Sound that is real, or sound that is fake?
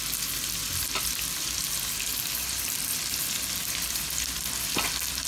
real